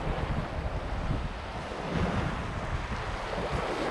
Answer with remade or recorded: recorded